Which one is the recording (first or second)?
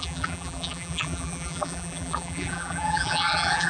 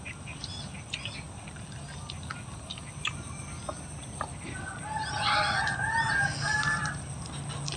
second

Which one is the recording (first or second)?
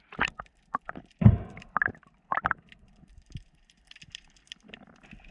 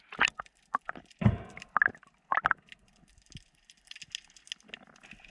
second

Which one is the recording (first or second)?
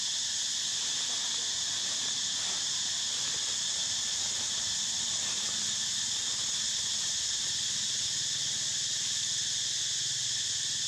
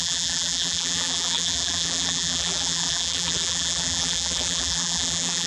first